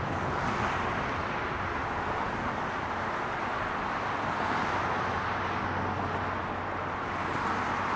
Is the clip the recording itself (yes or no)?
yes